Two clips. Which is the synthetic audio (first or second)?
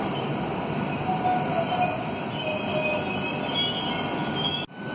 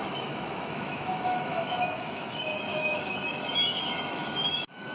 second